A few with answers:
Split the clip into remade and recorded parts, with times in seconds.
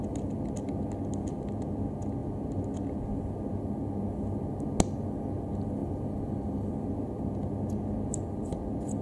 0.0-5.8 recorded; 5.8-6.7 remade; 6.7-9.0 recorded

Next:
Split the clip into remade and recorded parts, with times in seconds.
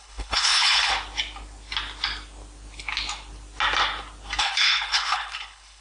0.0-0.9 remade; 0.9-4.4 recorded; 4.4-5.8 remade